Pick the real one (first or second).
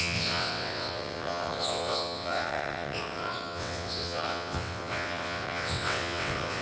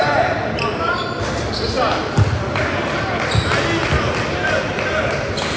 second